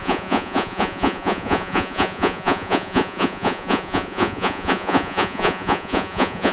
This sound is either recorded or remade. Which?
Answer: remade